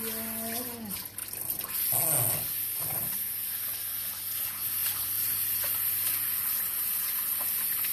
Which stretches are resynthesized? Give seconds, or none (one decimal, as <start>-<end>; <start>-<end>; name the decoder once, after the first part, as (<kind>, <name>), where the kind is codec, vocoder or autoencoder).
none